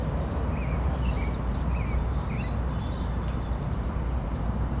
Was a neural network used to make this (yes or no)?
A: yes